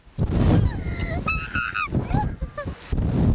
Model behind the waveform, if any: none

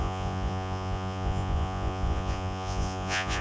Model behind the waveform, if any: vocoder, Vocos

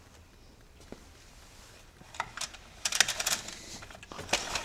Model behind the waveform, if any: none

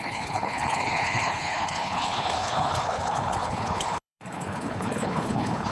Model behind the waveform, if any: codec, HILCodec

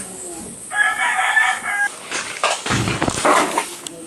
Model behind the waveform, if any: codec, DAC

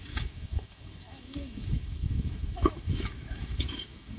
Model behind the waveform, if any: autoencoder, DAC-VAE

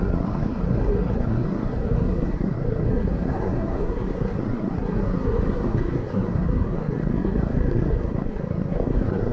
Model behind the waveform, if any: codec, SNAC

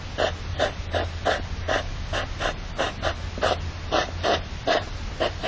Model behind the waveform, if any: none